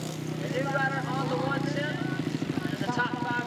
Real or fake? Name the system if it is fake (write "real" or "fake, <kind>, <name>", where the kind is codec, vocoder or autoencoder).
real